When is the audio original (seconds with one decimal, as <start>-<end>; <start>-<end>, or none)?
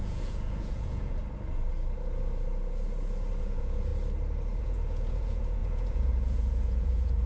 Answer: 1.2-3.4; 3.9-4.6